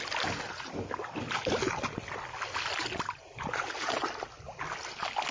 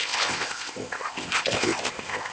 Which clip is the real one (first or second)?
first